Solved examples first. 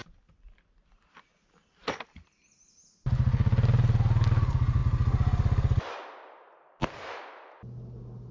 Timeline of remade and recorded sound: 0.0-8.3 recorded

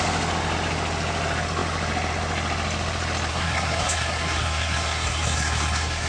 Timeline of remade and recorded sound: 0.0-3.3 recorded; 3.3-6.1 remade

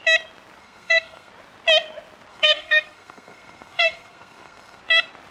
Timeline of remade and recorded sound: 0.0-0.6 recorded; 0.6-1.3 remade; 1.3-2.3 recorded; 2.3-4.8 remade; 4.8-5.3 recorded

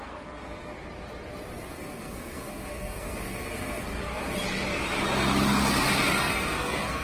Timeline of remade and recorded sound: 0.0-0.7 remade; 0.7-1.7 recorded; 1.7-4.2 remade; 4.2-6.2 recorded; 6.2-7.0 remade

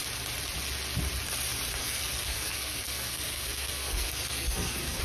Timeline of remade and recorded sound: 0.0-1.8 recorded; 1.8-5.0 remade

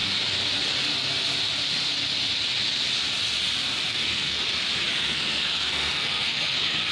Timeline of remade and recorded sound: 0.0-3.9 recorded; 3.9-4.4 remade; 4.4-4.9 recorded; 4.9-6.9 remade

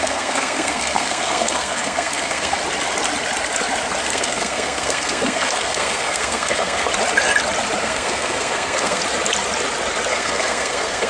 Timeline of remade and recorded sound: 0.0-2.6 remade; 2.6-4.0 recorded; 4.0-6.9 remade; 6.9-7.8 recorded; 7.8-9.0 remade; 9.0-10.1 recorded; 10.1-11.1 remade

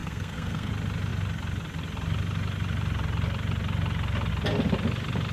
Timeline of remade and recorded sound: 0.0-0.7 remade; 0.7-5.3 recorded